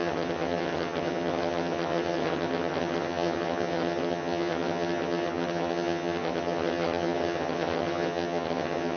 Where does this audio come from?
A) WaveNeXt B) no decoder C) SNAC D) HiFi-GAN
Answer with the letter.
D